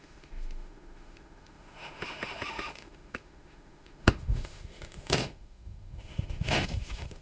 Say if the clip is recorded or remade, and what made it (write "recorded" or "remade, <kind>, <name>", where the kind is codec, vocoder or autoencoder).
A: remade, autoencoder, DAC-VAE